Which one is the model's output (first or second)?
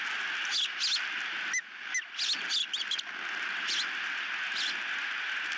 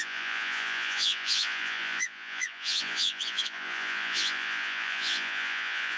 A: second